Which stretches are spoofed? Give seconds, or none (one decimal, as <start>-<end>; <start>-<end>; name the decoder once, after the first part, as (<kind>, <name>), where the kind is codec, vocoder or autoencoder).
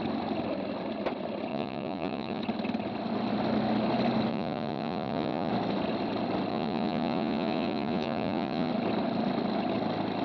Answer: 1.5-2.4 (vocoder, Vocos); 4.3-5.5; 6.5-8.7